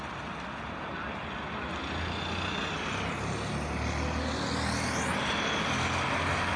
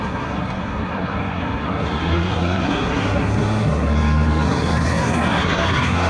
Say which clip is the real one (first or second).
first